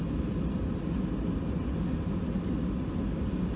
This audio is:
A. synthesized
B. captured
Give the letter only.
B